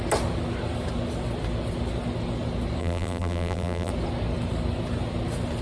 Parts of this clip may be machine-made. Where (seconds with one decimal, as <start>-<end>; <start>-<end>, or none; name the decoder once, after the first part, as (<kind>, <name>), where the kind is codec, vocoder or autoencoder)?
2.8-3.9 (vocoder, BigVGAN v2)